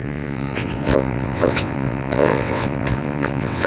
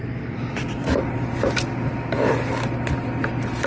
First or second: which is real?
second